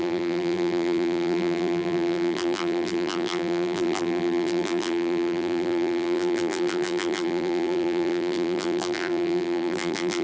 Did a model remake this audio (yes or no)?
yes